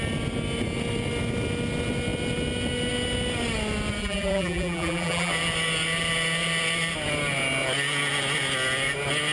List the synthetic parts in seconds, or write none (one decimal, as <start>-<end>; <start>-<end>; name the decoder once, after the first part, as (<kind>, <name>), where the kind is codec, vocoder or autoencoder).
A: 4.0-5.3 (vocoder, BigVGAN v2)